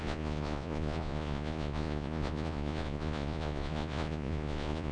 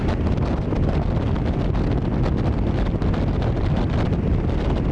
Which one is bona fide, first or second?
second